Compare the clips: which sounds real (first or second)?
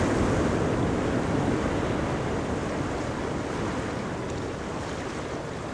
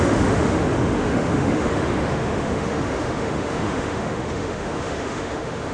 first